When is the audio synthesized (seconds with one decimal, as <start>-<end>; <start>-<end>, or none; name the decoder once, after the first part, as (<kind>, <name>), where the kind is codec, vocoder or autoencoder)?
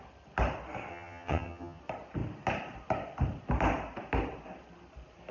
0.9-1.8 (vocoder, HiFi-GAN)